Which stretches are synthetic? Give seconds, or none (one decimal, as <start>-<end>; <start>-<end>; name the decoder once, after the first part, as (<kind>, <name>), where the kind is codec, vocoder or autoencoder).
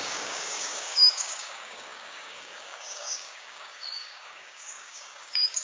0.0-5.6 (codec, DAC)